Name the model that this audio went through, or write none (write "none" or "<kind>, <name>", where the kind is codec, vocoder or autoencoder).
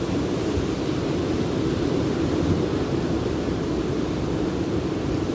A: none